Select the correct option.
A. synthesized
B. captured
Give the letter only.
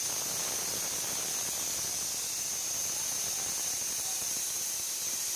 B